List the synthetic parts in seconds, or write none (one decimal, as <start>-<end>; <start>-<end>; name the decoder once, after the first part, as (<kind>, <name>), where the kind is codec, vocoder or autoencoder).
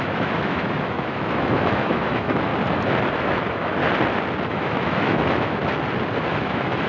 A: 0.0-2.5 (autoencoder, DAC-VAE); 3.1-3.8; 4.5-5.6; 6.3-6.9